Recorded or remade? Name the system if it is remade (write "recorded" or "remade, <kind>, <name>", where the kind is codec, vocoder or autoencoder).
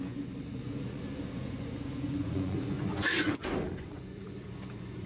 remade, vocoder, Vocos